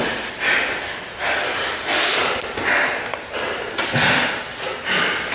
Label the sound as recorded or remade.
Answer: recorded